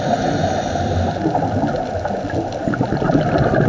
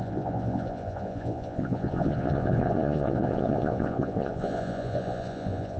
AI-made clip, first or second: second